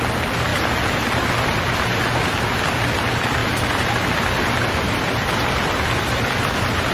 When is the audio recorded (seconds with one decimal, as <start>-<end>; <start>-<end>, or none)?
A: 0.0-6.9